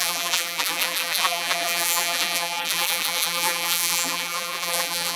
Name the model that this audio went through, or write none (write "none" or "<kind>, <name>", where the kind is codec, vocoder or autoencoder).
vocoder, BigVGAN v2